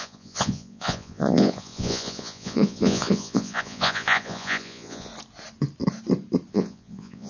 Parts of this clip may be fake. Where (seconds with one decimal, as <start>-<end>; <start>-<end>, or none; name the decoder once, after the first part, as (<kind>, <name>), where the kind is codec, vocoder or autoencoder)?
0.0-5.1 (vocoder, Vocos); 6.5-7.3